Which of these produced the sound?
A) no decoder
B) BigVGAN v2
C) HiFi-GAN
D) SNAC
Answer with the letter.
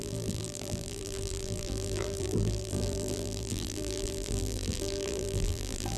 B